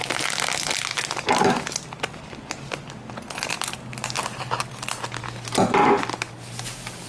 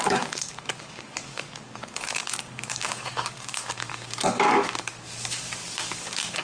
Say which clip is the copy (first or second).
second